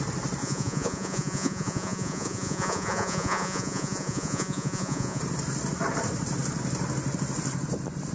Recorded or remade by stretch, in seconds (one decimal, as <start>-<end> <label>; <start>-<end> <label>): 0.0-0.4 recorded; 0.4-5.2 remade; 5.2-8.1 recorded